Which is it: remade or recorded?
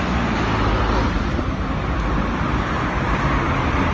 recorded